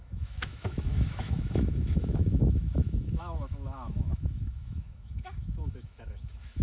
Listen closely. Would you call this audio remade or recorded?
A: remade